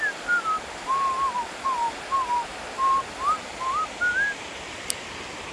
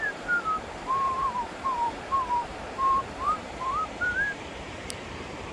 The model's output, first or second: second